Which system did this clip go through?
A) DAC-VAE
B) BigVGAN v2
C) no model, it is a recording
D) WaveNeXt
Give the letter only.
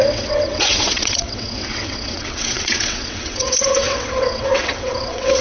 D